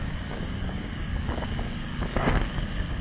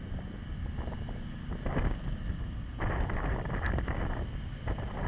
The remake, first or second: first